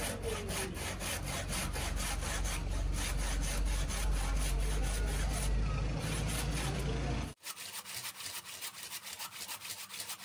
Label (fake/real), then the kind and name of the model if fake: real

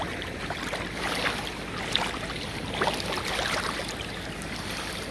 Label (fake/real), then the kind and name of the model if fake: real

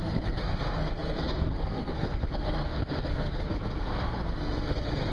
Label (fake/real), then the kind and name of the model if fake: fake, codec, SNAC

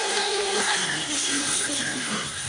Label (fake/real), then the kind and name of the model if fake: fake, codec, SNAC